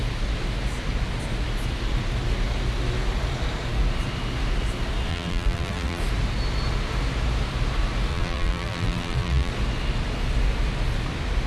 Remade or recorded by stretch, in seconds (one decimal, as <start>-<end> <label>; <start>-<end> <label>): 0.0-5.1 recorded; 5.1-6.0 remade; 6.0-8.1 recorded; 8.1-9.5 remade; 9.5-11.5 recorded